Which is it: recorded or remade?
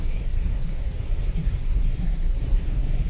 remade